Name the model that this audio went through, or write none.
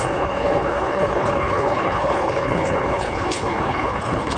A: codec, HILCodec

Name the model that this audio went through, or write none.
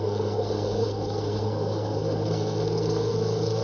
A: codec, SNAC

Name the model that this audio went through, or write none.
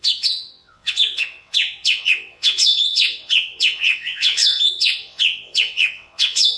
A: vocoder, WaveNeXt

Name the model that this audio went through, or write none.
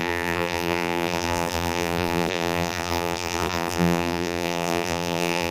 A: vocoder, BigVGAN v2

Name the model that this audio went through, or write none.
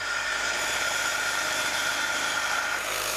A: vocoder, BigVGAN v2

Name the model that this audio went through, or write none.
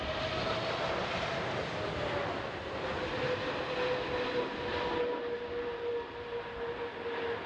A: none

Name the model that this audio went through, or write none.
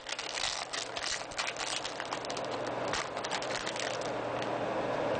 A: none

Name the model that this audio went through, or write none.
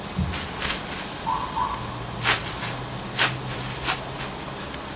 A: none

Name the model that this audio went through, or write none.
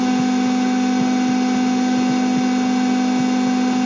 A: none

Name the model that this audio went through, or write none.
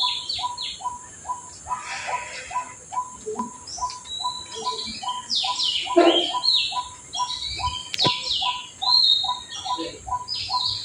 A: none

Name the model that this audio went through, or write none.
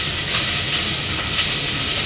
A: none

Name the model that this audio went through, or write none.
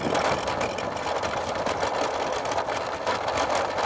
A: none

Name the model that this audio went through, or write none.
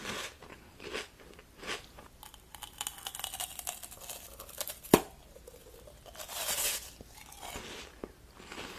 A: none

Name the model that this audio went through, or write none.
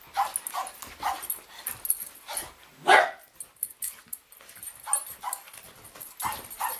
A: none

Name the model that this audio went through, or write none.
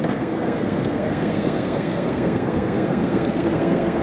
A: codec, SNAC